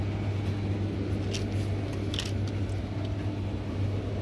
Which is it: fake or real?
real